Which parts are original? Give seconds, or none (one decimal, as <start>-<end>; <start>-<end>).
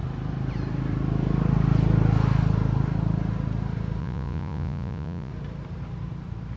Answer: 0.0-4.0; 5.3-6.6